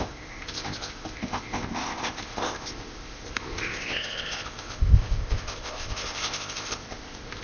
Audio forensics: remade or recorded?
remade